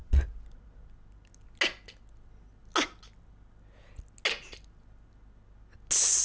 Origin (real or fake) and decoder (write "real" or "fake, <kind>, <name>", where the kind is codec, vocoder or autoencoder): real